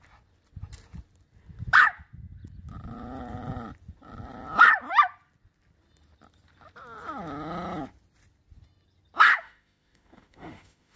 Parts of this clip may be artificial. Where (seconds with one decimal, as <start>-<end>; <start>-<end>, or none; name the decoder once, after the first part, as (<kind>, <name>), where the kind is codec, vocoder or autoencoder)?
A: 9.3-11.0 (autoencoder, DAC-VAE)